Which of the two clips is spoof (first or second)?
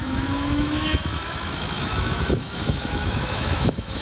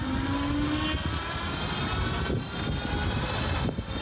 first